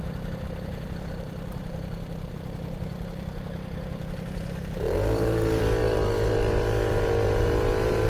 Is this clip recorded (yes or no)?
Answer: no